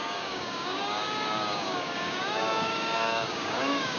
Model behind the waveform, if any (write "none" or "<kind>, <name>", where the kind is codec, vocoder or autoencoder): codec, DAC